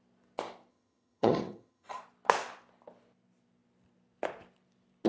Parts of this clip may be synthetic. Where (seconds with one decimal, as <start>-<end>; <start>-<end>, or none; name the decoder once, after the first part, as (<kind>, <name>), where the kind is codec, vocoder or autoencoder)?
0.7-2.0 (vocoder, HiFi-GAN)